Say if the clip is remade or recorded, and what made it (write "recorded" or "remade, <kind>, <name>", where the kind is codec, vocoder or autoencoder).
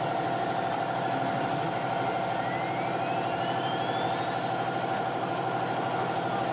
recorded